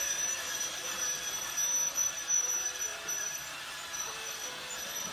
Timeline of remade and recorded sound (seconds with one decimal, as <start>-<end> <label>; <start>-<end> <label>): 0.0-2.9 recorded; 2.9-4.3 remade; 4.3-5.1 recorded